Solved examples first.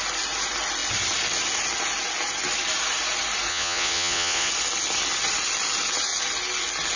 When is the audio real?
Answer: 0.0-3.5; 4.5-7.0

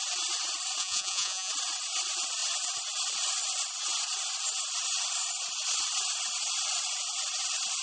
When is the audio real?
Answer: 0.0-0.8; 1.5-7.8